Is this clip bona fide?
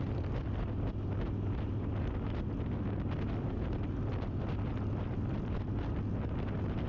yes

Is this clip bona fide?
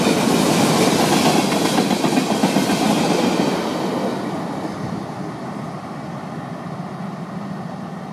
yes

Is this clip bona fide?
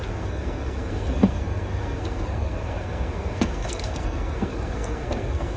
no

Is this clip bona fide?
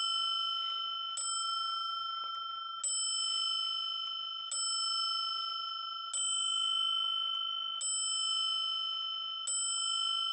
yes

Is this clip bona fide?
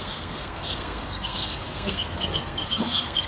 no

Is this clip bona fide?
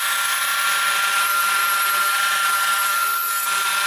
yes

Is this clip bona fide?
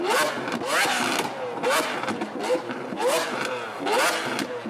yes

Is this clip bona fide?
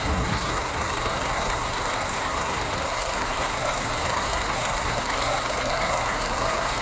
no